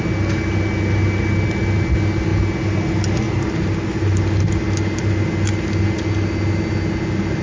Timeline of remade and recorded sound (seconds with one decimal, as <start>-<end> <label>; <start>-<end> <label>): 0.0-7.4 recorded